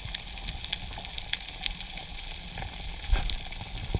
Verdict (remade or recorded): recorded